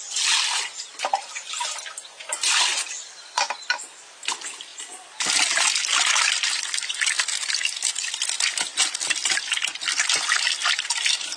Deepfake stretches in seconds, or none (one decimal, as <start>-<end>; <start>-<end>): none

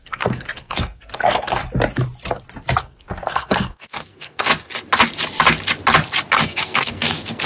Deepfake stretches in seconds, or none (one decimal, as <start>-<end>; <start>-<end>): 0.0-1.6; 2.8-4.5; 6.4-7.5

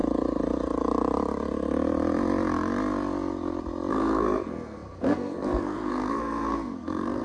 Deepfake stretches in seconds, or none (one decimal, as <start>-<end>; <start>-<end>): 3.9-7.2

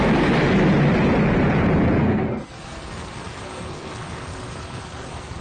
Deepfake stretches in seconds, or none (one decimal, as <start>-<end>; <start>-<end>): 2.0-5.4

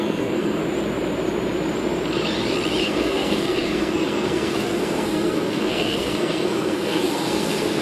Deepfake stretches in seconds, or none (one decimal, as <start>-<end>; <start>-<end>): 0.0-0.6; 2.8-7.8

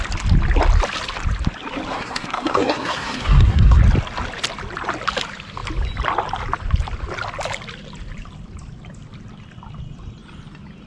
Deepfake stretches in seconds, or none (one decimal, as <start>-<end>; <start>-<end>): 1.9-3.8